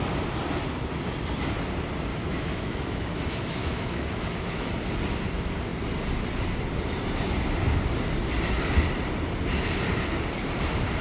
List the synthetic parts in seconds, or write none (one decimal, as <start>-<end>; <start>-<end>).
2.1-4.7